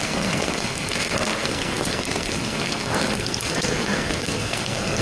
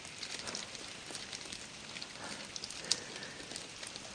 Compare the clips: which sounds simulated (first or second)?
first